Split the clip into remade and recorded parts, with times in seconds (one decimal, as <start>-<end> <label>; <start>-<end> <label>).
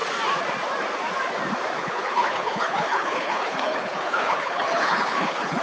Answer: 0.0-1.8 recorded; 1.8-5.6 remade